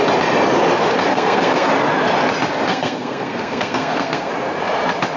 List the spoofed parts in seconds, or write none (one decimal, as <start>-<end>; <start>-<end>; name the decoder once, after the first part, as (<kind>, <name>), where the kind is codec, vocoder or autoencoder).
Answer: 1.1-1.7 (codec, SNAC); 2.7-4.3

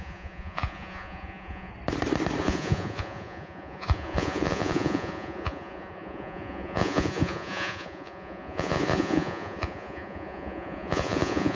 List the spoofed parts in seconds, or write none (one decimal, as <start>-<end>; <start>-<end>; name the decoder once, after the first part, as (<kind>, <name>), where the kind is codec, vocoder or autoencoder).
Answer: 0.0-1.7 (vocoder, Vocos); 2.4-11.6

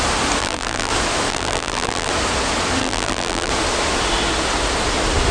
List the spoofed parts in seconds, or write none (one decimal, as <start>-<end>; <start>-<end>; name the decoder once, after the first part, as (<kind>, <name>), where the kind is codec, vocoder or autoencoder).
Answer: 0.4-0.9 (vocoder, BigVGAN v2); 1.3-2.1; 2.8-3.5

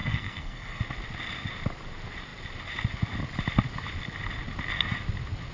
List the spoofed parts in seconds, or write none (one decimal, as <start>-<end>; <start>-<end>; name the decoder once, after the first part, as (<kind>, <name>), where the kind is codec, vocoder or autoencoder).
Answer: 0.0-0.8 (codec, SNAC)

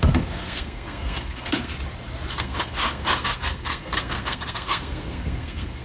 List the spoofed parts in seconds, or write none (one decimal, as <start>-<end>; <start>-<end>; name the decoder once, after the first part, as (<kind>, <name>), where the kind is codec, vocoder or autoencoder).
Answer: 0.0-1.7 (codec, SNAC); 2.3-5.8